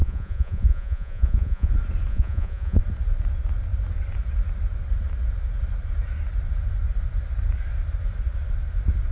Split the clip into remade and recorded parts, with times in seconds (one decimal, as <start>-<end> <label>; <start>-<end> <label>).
0.0-1.7 remade; 1.7-2.1 recorded; 2.1-2.8 remade; 2.8-9.1 recorded